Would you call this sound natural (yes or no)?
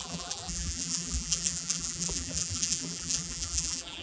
no